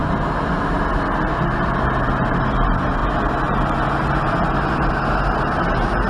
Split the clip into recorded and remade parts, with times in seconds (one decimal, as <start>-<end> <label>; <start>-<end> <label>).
0.0-6.1 recorded